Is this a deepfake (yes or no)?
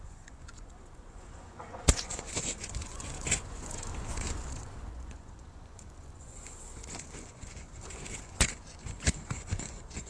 yes